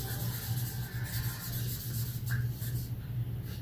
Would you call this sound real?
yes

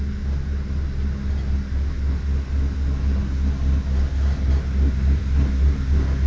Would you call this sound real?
yes